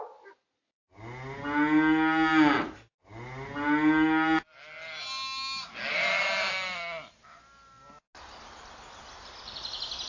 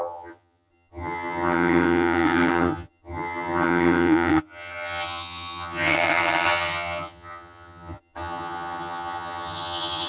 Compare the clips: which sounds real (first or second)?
first